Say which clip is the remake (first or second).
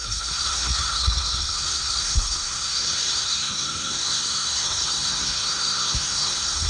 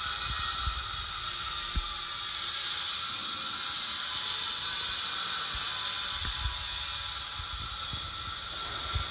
first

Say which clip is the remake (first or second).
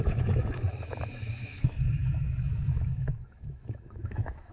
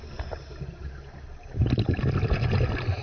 first